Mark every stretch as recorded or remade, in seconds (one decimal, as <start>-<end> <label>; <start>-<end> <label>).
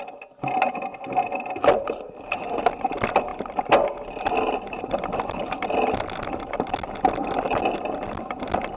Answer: 0.0-8.8 recorded